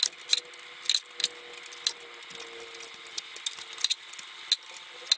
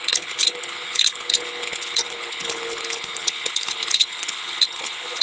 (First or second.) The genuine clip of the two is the first